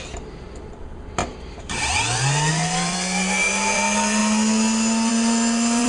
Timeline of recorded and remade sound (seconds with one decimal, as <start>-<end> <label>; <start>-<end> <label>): 0.0-4.2 remade; 4.2-5.1 recorded; 5.1-5.9 remade